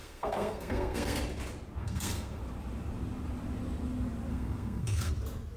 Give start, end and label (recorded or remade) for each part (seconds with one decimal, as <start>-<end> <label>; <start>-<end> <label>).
0.0-1.2 remade; 1.2-1.8 recorded; 1.8-2.4 remade; 2.4-4.3 recorded; 4.3-5.1 remade; 5.1-5.6 recorded